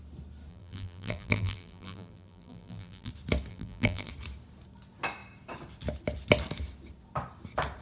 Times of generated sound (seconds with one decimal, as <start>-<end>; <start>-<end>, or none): 0.5-3.1; 3.5-4.1